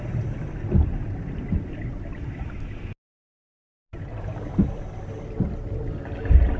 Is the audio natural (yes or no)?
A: yes